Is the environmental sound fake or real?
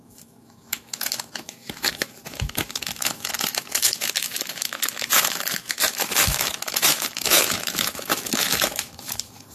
fake